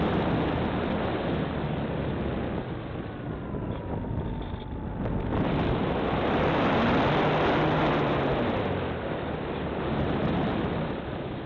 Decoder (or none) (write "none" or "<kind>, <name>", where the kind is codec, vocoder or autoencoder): none